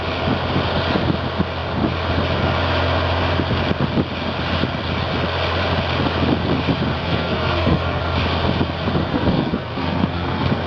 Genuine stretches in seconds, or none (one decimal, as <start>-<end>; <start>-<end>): 0.0-7.0; 8.0-9.1